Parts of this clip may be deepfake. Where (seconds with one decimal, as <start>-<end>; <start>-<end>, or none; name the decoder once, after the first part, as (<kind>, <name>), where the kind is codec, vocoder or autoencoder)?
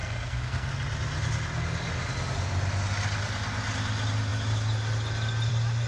0.0-0.7 (codec, SNAC)